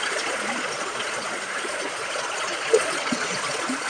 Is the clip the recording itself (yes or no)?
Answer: no